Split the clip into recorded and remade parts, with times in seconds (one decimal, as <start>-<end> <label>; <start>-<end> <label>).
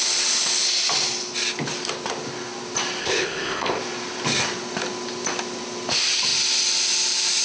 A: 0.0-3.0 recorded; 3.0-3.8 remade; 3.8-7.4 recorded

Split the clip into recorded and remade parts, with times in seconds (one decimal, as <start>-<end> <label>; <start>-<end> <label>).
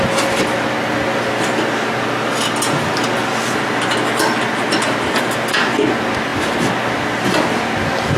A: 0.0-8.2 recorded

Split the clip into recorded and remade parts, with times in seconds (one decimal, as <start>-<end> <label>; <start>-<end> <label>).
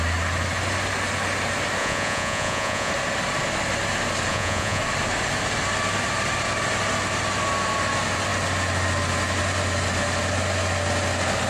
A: 0.0-1.8 recorded; 1.8-2.9 remade; 2.9-4.3 recorded; 4.3-4.8 remade; 4.8-11.5 recorded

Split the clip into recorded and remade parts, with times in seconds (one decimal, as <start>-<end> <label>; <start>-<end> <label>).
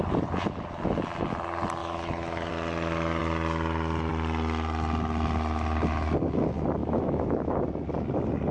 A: 0.0-1.8 recorded; 1.8-2.5 remade; 2.5-6.8 recorded; 6.8-7.6 remade; 7.6-8.5 recorded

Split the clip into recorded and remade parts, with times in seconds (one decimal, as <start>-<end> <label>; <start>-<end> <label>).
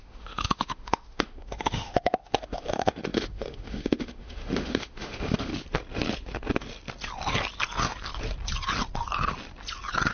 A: 0.0-5.5 remade; 5.5-10.1 recorded